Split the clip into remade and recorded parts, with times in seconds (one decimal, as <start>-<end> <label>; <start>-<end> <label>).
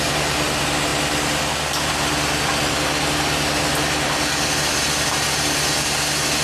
0.0-6.4 recorded